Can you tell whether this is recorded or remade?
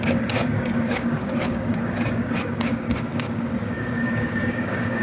remade